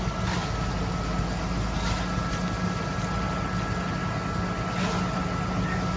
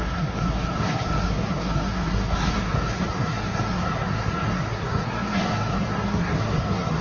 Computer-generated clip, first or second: second